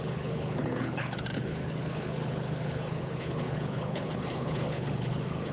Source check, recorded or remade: remade